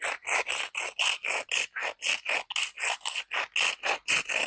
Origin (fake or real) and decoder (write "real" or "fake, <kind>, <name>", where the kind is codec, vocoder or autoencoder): real